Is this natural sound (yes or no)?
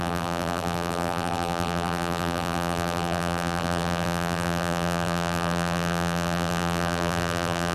no